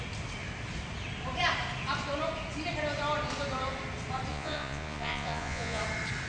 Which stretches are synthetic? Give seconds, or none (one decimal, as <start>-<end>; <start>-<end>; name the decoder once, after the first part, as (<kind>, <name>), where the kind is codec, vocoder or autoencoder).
4.3-5.8 (vocoder, Vocos)